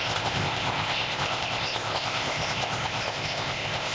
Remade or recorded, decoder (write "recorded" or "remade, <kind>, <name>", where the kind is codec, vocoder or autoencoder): remade, codec, ZipCodec